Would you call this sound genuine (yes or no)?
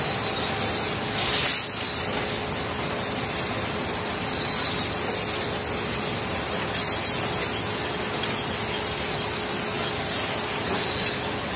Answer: yes